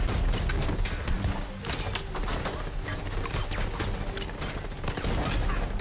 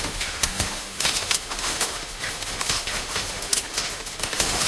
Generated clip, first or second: second